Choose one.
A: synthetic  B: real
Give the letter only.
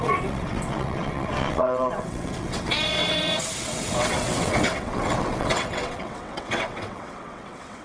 A